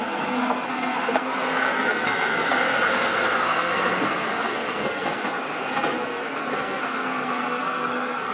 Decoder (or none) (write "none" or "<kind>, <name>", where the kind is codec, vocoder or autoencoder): codec, SNAC